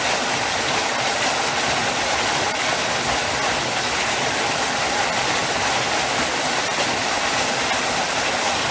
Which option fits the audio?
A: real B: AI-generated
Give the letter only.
A